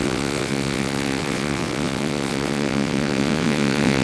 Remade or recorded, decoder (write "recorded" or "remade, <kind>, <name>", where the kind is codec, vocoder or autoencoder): remade, vocoder, WaveNeXt